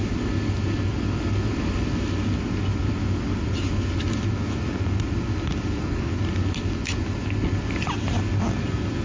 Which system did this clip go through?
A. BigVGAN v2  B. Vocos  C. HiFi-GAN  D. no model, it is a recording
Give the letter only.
D